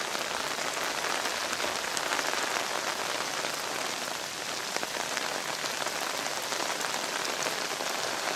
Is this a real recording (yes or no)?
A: yes